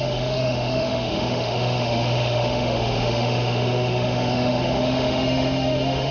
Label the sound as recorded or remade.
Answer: remade